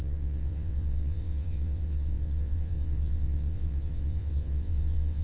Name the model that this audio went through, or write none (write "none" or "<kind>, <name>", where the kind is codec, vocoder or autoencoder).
vocoder, WaveNeXt